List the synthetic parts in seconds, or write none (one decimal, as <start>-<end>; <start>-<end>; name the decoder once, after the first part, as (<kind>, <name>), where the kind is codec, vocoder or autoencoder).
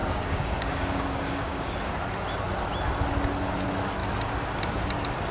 0.0-1.7 (codec, DAC)